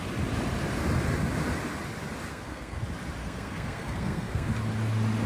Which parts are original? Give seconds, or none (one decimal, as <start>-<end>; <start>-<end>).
0.0-2.3; 2.8-3.2; 4.5-5.3